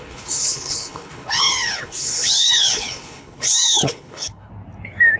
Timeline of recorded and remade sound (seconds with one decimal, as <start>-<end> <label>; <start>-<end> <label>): 0.0-4.5 remade; 4.5-5.2 recorded